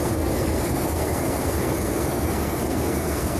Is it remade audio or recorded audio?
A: remade